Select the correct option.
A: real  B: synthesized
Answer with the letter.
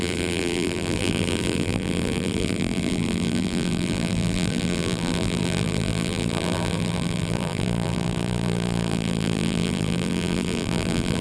B